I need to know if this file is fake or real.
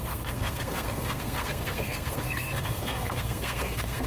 fake